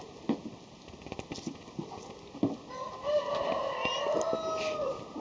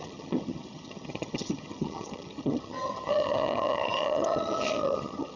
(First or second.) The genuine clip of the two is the first